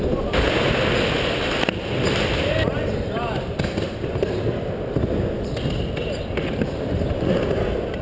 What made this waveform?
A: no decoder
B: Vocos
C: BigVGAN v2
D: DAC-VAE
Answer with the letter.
A